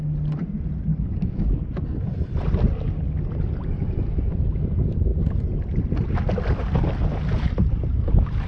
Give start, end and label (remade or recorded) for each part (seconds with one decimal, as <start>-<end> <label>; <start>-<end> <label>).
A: 0.0-0.9 recorded; 0.9-1.6 remade; 1.6-8.5 recorded